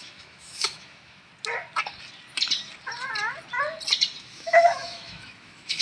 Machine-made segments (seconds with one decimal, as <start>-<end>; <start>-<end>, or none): 0.0-1.3; 4.2-5.8